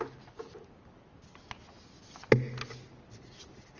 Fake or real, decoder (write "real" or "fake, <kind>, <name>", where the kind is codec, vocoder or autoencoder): real